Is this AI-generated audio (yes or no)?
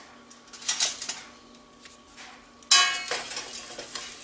no